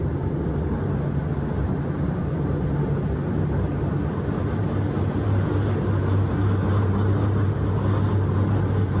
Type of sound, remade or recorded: recorded